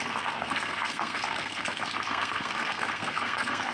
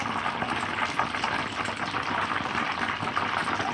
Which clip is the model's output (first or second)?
first